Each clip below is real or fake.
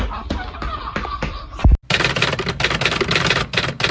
real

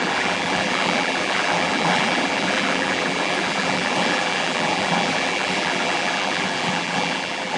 fake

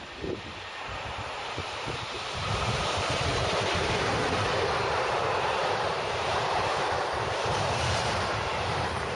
fake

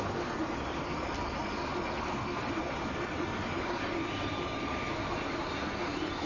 real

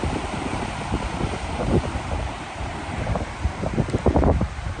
fake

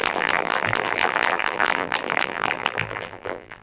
fake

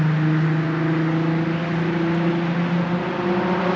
real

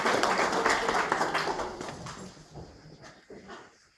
real